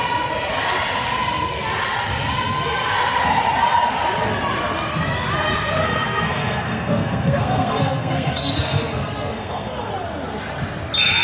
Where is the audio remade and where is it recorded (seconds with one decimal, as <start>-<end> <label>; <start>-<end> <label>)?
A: 0.0-5.8 recorded; 5.8-9.9 remade; 9.9-11.2 recorded